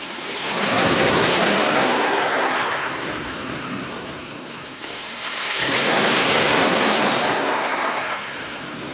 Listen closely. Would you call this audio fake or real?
fake